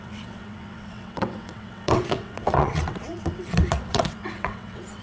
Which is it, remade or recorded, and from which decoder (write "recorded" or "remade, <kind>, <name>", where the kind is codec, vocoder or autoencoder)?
remade, vocoder, WaveNeXt